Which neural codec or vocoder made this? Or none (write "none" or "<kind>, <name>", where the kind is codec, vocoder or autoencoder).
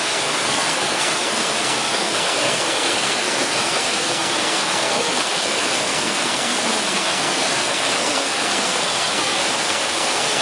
codec, SNAC